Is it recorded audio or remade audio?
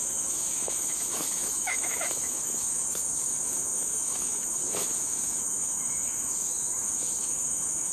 remade